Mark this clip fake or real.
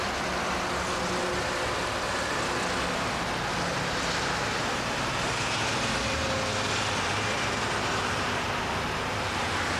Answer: real